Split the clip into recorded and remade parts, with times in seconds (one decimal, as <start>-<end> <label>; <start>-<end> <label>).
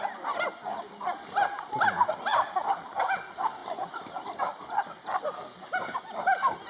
0.0-6.7 recorded